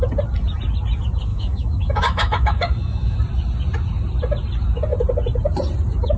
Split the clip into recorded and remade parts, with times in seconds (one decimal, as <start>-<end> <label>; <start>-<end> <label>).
0.0-1.3 recorded; 1.3-3.2 remade; 3.2-6.2 recorded